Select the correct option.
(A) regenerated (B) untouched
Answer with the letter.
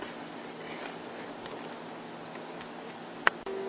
B